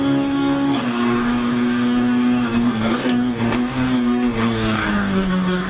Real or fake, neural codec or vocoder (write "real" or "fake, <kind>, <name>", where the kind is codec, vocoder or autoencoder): fake, codec, DAC